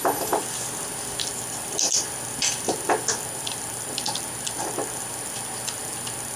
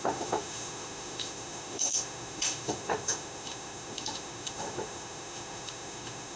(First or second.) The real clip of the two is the first